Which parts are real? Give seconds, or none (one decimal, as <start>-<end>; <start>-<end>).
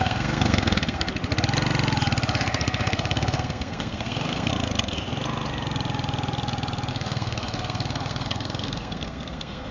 1.1-2.4; 4.5-6.9